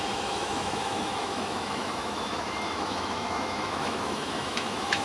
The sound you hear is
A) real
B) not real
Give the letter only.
B